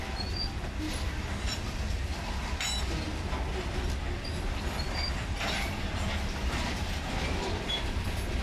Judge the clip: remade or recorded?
recorded